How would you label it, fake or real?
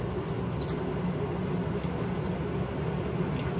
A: real